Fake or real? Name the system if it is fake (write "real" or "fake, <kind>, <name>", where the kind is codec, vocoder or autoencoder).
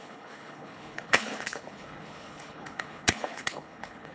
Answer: fake, codec, HILCodec